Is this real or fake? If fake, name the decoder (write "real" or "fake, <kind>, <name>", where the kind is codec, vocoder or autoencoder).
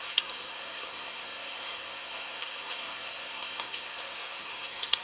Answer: fake, codec, SNAC